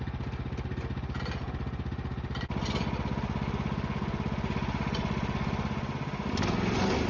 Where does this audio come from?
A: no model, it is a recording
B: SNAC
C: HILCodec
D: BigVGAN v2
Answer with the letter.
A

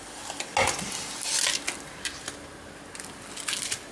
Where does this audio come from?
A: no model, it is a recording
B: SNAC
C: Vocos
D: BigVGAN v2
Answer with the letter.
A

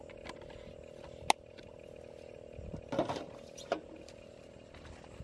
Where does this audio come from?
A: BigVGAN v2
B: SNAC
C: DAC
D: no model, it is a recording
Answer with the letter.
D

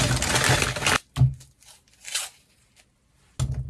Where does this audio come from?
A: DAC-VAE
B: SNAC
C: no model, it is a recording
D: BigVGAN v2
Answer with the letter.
C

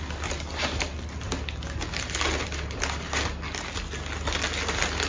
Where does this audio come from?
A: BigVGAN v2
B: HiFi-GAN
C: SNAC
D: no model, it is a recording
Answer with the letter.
D